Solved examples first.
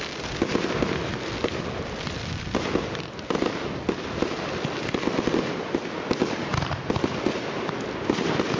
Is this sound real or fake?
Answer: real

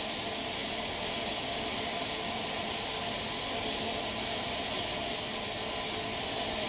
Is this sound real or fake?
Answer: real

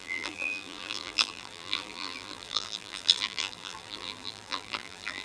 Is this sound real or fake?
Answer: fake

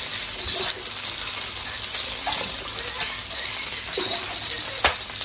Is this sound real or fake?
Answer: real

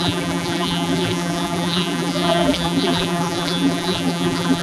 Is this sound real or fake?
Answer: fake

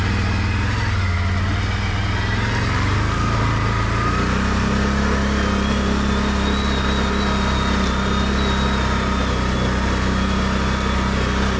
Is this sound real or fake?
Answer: real